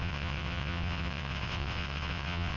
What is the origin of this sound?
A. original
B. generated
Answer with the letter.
B